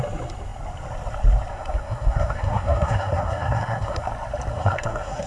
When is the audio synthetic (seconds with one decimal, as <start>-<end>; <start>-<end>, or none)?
1.5-4.1; 4.5-5.3